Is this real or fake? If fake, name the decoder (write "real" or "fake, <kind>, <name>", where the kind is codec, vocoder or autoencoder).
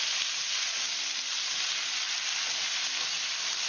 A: real